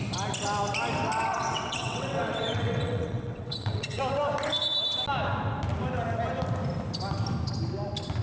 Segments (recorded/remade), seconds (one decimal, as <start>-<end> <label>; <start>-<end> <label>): 0.0-1.3 recorded; 1.3-4.0 remade; 4.0-8.2 recorded